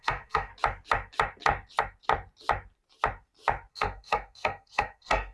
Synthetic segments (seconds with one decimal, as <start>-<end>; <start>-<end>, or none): 0.0-0.5; 3.7-5.3